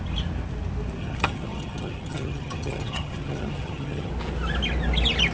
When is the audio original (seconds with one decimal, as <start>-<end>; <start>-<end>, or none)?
0.0-1.0; 4.1-5.3